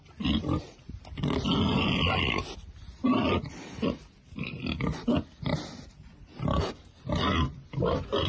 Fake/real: real